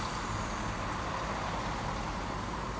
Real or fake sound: real